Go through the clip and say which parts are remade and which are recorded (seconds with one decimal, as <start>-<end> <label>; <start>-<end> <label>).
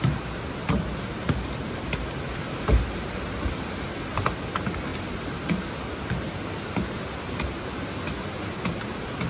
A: 0.0-9.3 recorded